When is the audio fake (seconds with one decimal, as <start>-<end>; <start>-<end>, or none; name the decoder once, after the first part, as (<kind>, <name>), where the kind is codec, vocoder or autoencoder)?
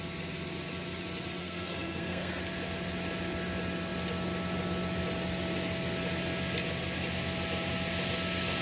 1.4-2.4 (codec, SNAC)